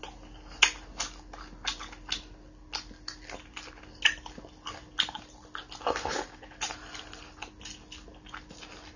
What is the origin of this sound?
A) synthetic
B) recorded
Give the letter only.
B